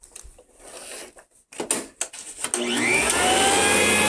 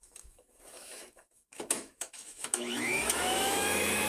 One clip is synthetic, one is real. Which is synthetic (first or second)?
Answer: second